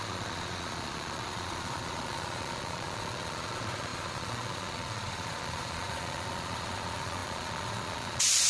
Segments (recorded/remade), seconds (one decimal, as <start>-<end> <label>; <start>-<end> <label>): 0.0-8.5 remade